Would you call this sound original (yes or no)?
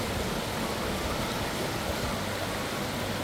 yes